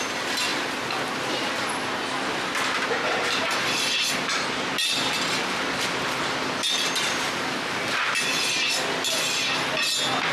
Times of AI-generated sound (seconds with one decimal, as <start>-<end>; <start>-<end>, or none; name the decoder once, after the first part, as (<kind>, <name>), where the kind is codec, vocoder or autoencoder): none